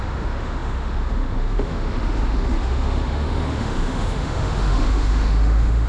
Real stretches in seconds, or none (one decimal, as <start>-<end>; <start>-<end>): none